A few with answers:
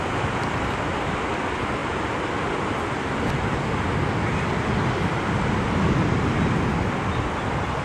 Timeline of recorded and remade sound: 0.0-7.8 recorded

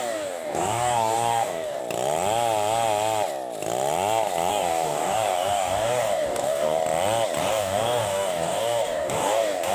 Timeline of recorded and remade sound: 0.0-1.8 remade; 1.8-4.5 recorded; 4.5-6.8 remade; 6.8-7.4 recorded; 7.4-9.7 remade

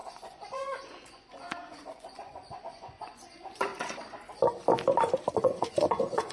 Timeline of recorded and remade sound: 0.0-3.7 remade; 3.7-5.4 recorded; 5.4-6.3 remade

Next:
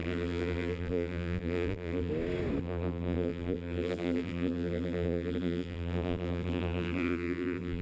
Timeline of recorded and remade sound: 0.0-2.1 remade; 2.1-2.6 recorded; 2.6-7.8 remade

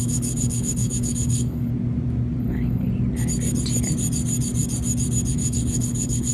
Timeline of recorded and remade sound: 0.0-1.7 remade; 1.7-2.4 recorded; 2.4-2.9 remade; 2.9-5.3 recorded; 5.3-6.3 remade

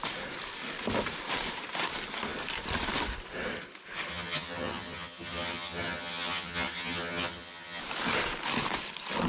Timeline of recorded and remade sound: 0.0-4.1 recorded; 4.1-7.8 remade; 7.8-9.3 recorded

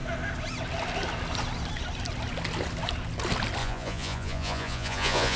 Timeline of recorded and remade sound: 0.0-3.6 recorded; 3.6-5.4 remade

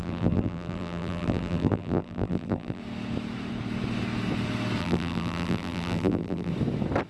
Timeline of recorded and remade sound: 0.0-2.8 remade; 2.8-4.8 recorded; 4.8-6.5 remade; 6.5-7.1 recorded